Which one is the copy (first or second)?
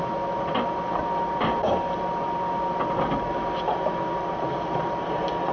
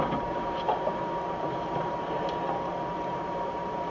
second